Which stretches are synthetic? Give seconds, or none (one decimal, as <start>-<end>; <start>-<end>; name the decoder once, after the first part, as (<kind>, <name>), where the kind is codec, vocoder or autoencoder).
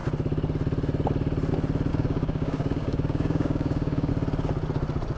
1.9-4.1 (codec, DAC)